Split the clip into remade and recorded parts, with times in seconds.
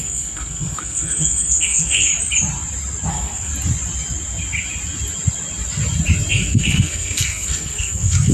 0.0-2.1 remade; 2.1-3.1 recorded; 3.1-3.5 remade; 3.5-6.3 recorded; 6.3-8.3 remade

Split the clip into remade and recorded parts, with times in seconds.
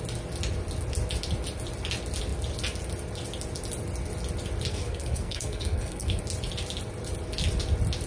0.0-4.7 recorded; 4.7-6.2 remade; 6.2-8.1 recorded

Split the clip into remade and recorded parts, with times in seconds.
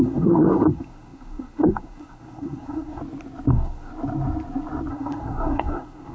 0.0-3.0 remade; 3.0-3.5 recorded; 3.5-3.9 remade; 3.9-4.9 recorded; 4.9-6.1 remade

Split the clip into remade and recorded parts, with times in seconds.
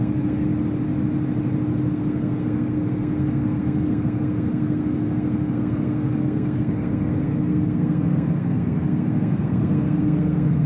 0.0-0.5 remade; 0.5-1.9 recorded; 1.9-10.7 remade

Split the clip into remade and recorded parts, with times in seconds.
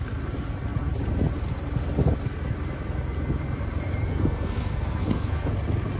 0.0-4.1 recorded; 4.1-5.5 remade; 5.5-6.0 recorded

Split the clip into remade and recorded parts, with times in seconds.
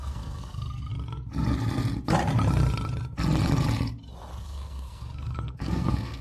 0.0-0.9 remade; 0.9-4.4 recorded; 4.4-6.2 remade